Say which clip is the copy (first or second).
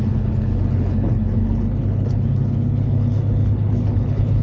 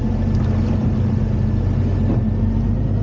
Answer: first